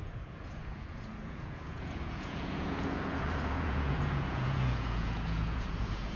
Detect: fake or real fake